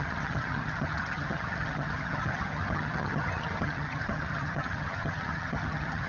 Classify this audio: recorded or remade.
remade